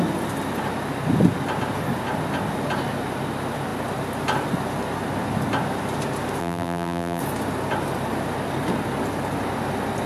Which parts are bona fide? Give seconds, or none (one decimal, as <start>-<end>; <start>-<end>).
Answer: 0.0-6.4; 7.2-10.1